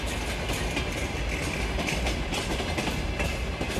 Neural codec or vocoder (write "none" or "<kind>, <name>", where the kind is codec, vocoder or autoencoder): none